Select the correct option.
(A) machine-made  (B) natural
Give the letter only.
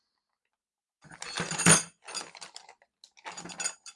B